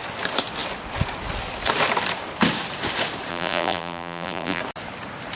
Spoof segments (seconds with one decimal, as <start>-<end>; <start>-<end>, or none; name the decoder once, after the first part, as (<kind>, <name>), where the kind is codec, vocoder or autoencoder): 3.3-4.6 (vocoder, BigVGAN v2)